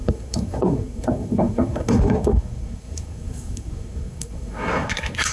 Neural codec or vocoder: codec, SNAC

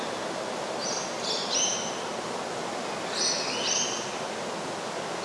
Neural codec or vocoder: none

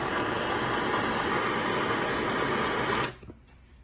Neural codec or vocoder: none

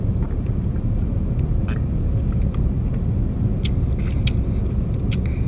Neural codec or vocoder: none